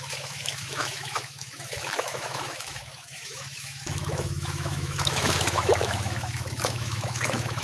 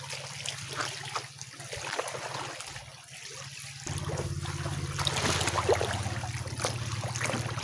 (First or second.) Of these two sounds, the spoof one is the first